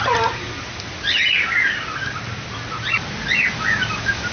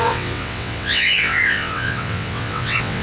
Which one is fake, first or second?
second